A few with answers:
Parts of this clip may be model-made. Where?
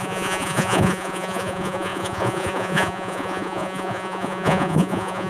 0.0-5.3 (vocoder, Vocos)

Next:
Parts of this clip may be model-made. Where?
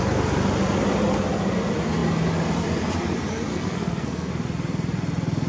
3.5-4.3 (codec, SNAC)